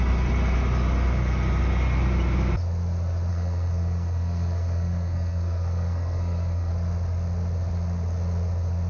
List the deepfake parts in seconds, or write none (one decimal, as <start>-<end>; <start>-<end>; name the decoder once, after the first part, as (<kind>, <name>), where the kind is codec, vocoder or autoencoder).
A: 3.3-6.7 (codec, SNAC)